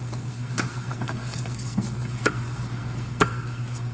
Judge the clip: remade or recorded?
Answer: remade